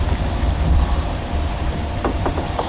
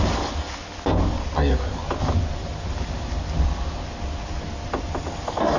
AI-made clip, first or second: first